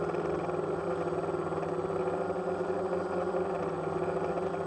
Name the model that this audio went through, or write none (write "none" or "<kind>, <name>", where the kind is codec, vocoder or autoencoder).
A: none